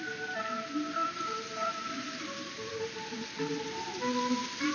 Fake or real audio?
real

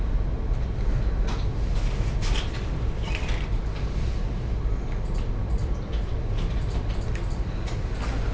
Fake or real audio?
real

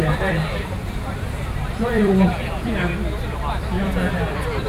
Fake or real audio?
fake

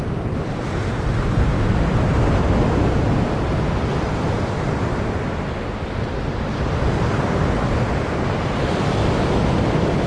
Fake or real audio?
real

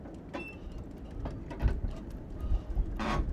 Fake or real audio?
real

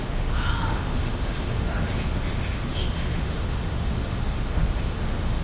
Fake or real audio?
fake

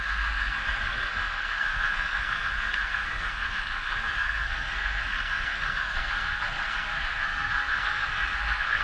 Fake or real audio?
fake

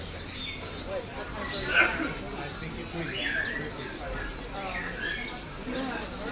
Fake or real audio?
real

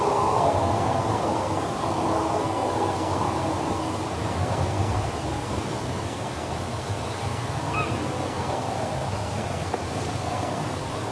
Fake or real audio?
fake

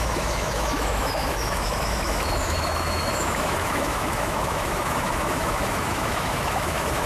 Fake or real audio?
fake